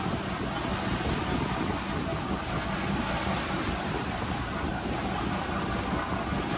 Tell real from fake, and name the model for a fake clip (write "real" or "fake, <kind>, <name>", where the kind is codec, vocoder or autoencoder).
real